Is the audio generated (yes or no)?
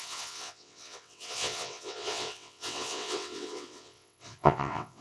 yes